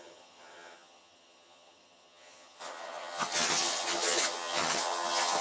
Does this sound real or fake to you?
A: fake